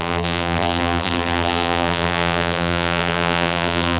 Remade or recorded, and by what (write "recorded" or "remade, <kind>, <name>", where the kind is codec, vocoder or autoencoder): remade, vocoder, BigVGAN v2